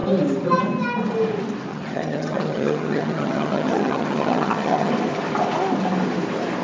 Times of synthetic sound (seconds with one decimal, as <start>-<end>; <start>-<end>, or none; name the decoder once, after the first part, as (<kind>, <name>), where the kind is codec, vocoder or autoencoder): 1.7-4.9 (vocoder, HiFi-GAN)